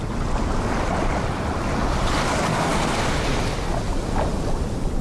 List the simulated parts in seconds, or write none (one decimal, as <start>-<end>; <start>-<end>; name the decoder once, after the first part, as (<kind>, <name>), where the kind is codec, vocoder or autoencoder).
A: none